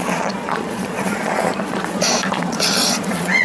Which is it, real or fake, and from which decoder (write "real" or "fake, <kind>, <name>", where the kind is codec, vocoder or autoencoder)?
fake, vocoder, Vocos